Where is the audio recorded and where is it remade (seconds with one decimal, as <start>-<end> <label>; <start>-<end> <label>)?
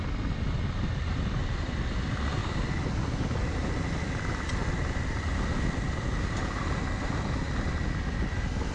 0.0-8.7 recorded